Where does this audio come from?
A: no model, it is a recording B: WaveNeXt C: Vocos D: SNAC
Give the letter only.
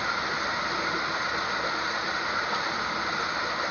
A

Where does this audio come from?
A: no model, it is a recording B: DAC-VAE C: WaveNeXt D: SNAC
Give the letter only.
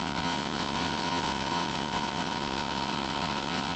C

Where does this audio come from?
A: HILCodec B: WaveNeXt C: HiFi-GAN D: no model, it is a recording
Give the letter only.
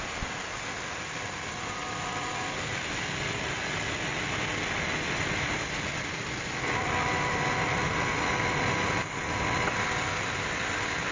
D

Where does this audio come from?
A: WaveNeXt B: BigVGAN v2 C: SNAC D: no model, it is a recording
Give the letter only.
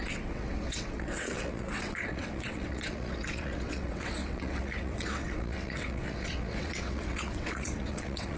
A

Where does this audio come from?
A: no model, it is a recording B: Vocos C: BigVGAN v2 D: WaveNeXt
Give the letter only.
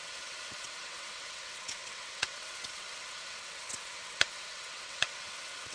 D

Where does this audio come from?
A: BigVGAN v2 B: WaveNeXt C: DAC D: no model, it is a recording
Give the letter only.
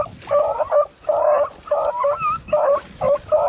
D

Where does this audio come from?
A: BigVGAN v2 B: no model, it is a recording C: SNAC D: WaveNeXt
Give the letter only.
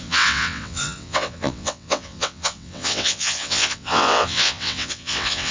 D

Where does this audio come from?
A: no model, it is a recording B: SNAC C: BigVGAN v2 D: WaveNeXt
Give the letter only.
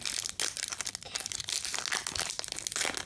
A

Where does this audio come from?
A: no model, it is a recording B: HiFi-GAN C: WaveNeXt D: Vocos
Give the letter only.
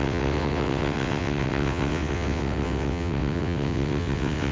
C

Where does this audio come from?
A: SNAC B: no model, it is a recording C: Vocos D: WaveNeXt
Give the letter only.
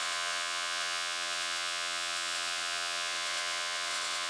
D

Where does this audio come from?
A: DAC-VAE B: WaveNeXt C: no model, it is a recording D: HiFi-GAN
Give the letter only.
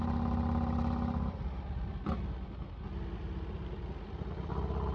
C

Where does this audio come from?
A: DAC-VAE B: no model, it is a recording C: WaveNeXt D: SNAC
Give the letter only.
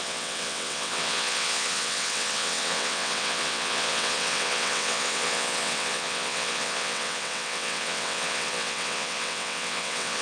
C